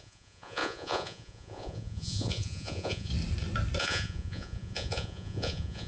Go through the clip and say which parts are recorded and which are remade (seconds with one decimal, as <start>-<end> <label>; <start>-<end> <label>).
0.0-3.1 remade; 3.1-3.8 recorded; 3.8-5.9 remade

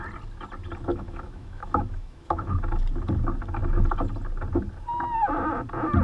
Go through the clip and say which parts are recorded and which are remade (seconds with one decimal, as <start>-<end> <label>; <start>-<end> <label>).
0.0-0.9 recorded; 0.9-2.6 remade; 2.6-6.0 recorded